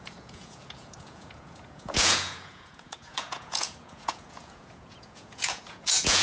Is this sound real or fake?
fake